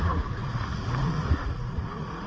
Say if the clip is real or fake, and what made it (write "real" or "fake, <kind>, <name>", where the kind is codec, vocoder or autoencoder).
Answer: fake, vocoder, Vocos